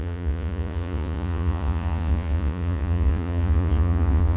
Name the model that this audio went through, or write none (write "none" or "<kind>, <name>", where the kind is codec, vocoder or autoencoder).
vocoder, Vocos